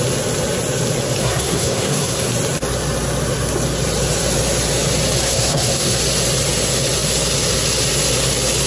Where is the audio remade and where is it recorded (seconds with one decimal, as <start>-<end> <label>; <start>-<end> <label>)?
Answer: 0.0-1.2 recorded; 1.2-2.3 remade; 2.3-5.2 recorded; 5.2-6.0 remade; 6.0-8.7 recorded